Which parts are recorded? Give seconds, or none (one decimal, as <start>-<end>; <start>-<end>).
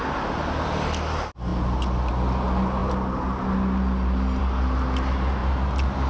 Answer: 0.0-6.1